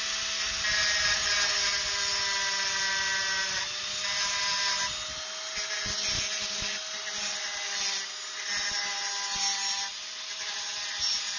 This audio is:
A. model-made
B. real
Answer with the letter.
B